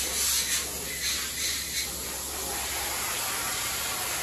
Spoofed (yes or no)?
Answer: no